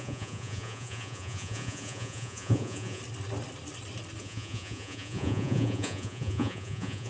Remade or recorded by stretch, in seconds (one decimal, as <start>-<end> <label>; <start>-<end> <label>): 0.0-3.0 remade; 3.0-4.2 recorded; 4.2-7.1 remade